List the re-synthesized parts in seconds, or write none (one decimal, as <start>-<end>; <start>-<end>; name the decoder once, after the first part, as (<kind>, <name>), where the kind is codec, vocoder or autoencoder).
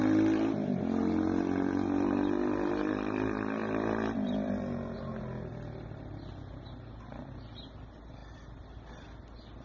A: 3.6-4.5 (vocoder, BigVGAN v2)